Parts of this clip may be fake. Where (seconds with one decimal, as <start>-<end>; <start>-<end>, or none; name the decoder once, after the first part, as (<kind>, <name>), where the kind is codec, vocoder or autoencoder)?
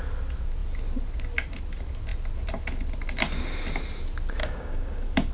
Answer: 4.4-5.3 (codec, DAC)